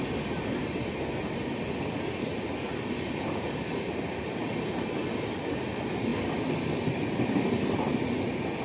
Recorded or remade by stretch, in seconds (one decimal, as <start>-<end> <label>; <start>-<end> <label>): 0.0-4.4 recorded; 4.4-5.0 remade; 5.0-6.1 recorded; 6.1-7.9 remade; 7.9-8.6 recorded